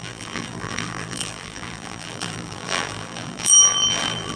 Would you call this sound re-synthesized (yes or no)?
yes